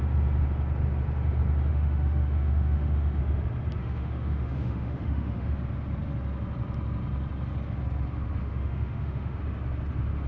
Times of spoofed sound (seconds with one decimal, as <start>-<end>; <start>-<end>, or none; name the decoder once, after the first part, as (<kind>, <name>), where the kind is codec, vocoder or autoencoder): 1.7-3.2 (autoencoder, DAC-VAE); 3.8-5.5; 8.4-9.4